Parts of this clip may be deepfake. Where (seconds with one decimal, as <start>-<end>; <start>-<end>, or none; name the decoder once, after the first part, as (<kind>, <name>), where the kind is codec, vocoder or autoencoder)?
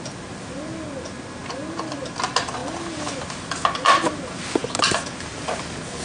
none